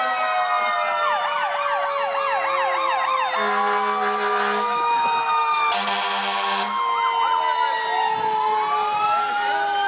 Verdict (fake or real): real